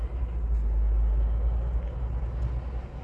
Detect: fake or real real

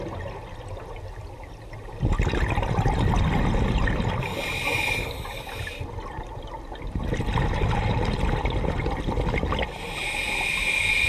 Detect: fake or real real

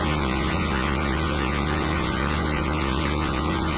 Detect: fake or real fake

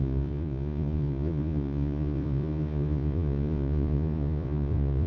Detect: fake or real fake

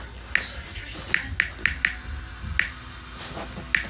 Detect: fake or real real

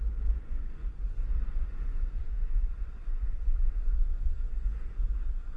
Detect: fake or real fake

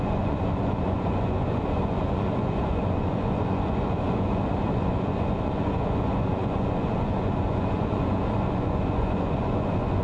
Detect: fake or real fake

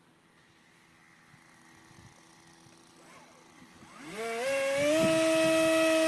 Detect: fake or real real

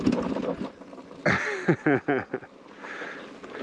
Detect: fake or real real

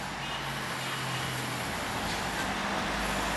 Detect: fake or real real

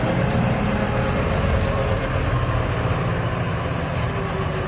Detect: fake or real real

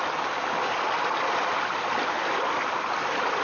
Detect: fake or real real